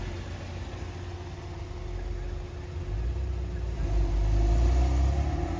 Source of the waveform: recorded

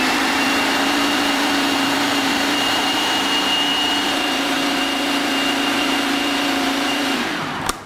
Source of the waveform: remade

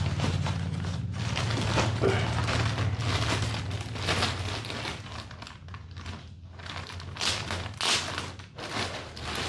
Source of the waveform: recorded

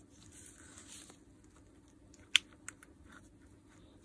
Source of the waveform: recorded